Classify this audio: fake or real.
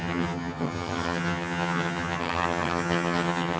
fake